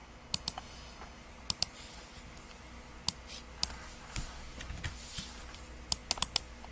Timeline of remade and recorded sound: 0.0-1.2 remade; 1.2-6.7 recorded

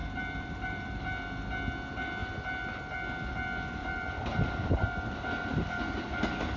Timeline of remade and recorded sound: 0.0-1.0 remade; 1.0-3.8 recorded; 3.8-5.8 remade; 5.8-6.6 recorded

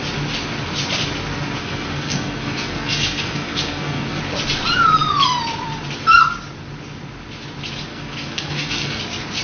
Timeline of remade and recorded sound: 0.0-1.6 recorded; 1.6-4.2 remade; 4.2-7.9 recorded; 7.9-9.0 remade; 9.0-9.4 recorded

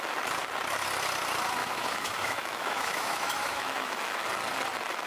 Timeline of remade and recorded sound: 0.0-1.6 recorded; 1.6-4.2 remade; 4.2-5.1 recorded